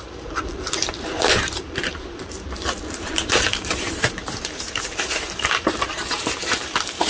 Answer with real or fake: fake